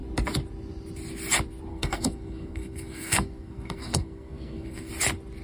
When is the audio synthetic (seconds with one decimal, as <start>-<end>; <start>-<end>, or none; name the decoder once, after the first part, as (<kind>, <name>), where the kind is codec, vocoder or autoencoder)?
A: 1.7-4.9 (codec, SNAC)